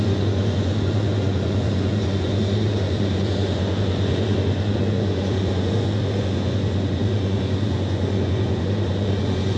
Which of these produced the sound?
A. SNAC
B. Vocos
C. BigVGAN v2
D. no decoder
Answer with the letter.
B